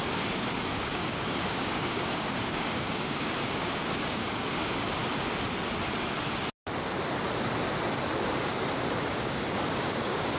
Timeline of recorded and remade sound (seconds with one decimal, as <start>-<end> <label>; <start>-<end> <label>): 0.0-5.0 remade; 5.0-9.0 recorded; 9.0-10.4 remade